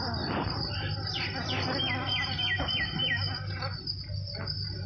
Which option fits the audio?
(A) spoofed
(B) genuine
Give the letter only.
B